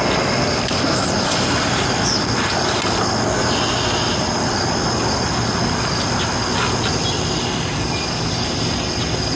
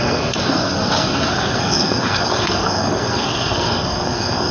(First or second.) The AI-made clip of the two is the second